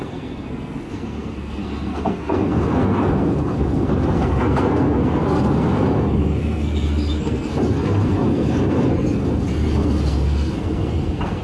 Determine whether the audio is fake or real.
fake